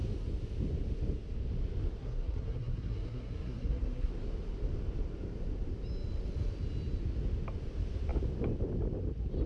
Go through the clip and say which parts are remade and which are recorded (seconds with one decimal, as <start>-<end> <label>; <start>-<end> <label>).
0.0-2.0 recorded; 2.0-4.1 remade; 4.1-9.5 recorded